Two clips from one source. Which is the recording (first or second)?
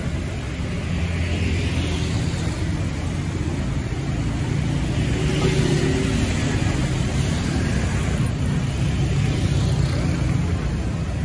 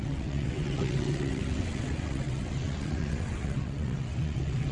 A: first